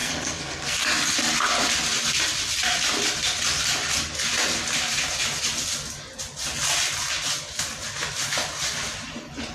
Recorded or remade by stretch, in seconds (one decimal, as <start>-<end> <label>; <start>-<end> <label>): 0.0-0.8 remade; 0.8-9.5 recorded